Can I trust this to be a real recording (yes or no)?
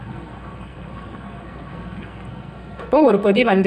no